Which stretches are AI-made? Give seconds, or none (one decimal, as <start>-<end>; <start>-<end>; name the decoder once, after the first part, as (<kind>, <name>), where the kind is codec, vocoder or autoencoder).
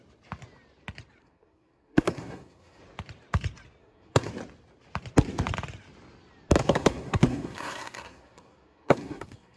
1.2-2.8 (codec, SNAC); 3.8-4.3; 6.6-9.6